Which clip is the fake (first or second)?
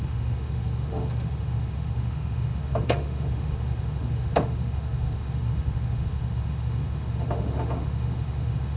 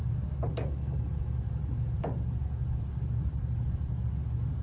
first